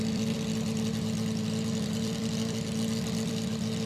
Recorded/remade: remade